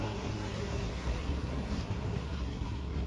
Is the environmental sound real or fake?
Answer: fake